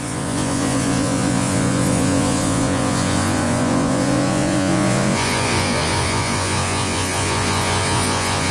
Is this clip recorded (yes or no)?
no